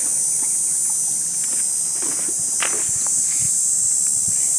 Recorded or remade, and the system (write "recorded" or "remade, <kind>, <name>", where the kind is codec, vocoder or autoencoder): recorded